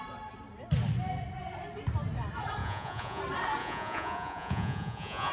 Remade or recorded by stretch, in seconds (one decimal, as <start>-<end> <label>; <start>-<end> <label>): 0.0-2.6 recorded; 2.6-3.2 remade; 3.2-3.6 recorded; 3.6-5.3 remade